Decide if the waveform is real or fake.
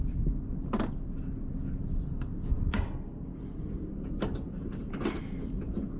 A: real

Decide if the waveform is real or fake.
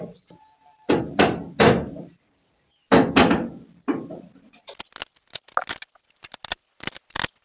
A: real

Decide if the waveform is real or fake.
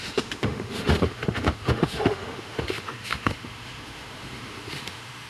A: fake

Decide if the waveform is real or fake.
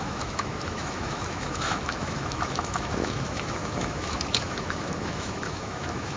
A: fake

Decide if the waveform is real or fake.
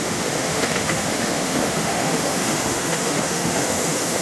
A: fake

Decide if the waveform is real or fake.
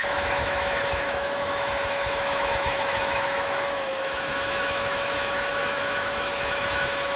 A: fake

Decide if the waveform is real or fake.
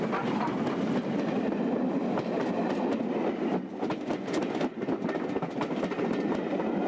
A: real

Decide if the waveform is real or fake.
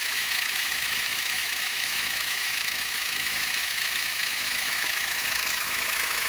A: fake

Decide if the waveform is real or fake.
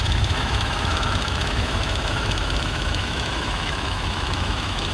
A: fake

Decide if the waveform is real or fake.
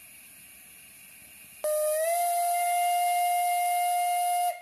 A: real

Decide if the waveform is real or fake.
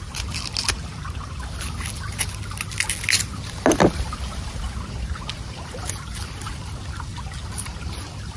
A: real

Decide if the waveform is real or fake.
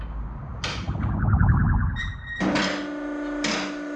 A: real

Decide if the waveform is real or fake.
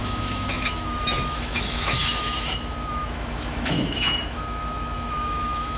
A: fake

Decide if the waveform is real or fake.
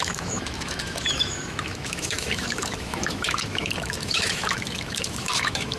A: fake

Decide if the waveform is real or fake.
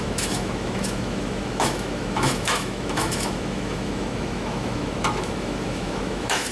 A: fake